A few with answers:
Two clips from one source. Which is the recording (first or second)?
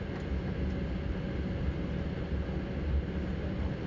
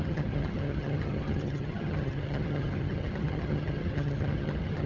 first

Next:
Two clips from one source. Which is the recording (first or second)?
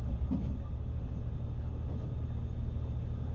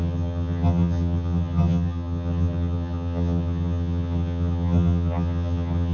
first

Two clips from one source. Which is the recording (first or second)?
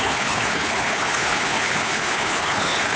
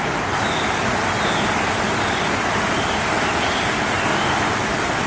second